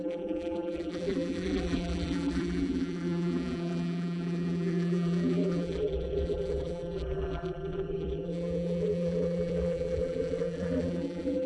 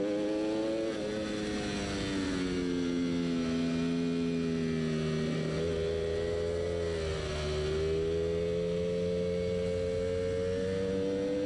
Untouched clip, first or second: second